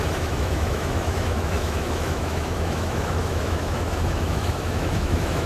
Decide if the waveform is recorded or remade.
remade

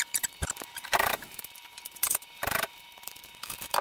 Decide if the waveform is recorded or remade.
remade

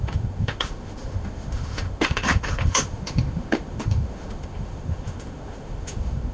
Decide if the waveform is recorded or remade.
remade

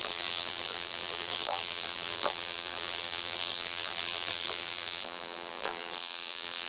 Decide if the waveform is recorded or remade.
remade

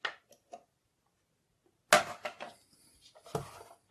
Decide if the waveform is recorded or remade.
recorded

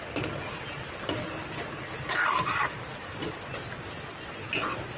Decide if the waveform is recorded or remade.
recorded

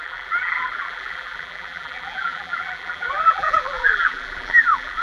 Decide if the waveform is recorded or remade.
remade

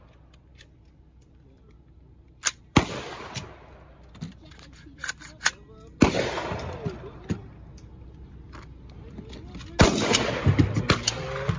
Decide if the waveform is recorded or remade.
recorded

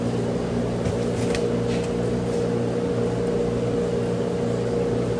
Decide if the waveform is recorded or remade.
recorded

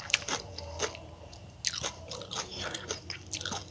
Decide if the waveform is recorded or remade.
recorded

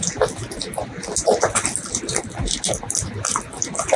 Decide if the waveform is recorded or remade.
recorded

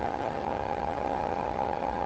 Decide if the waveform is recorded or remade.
remade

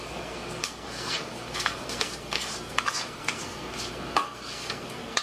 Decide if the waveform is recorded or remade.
remade